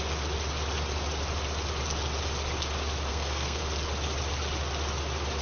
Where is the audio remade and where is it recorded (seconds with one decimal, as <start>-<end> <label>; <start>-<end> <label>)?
0.0-3.1 recorded; 3.1-3.6 remade; 3.6-5.4 recorded